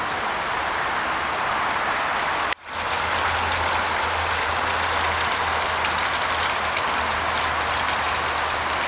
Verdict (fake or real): real